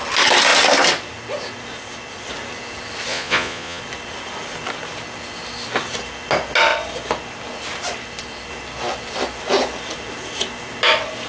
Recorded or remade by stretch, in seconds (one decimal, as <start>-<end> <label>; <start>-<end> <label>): 0.0-3.1 recorded; 3.1-3.8 remade; 3.8-11.3 recorded